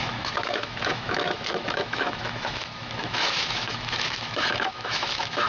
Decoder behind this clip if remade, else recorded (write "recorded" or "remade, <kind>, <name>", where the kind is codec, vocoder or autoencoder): remade, autoencoder, DAC-VAE